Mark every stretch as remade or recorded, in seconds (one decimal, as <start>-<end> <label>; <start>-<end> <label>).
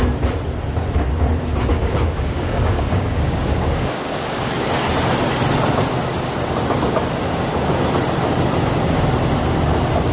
0.0-1.7 recorded; 1.7-4.5 remade; 4.5-10.1 recorded